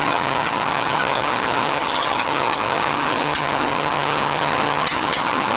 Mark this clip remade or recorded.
remade